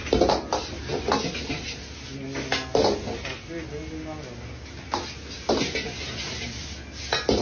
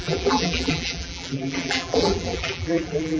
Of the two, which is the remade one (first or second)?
second